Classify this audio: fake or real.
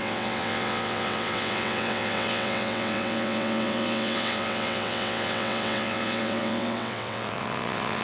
fake